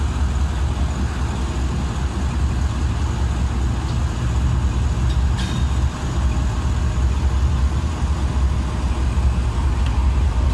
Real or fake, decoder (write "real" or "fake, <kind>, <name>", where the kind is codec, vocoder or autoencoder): real